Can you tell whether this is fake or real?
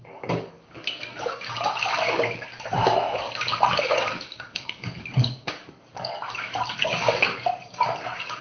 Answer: fake